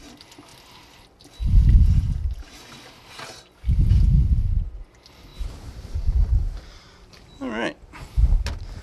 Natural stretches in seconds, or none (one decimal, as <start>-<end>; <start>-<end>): 0.0-5.3; 6.6-8.8